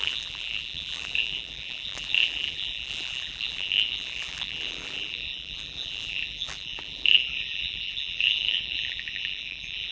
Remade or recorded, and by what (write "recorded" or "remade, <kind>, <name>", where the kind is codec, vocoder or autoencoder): remade, vocoder, BigVGAN v2